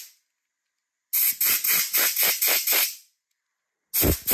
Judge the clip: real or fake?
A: real